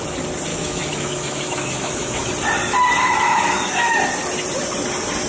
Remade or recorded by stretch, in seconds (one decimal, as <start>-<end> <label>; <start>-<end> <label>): 0.0-0.5 recorded; 0.5-2.3 remade; 2.3-3.0 recorded; 3.0-4.0 remade; 4.0-5.3 recorded